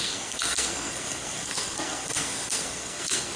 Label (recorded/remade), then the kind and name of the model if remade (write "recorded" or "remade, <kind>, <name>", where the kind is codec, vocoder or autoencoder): remade, codec, SNAC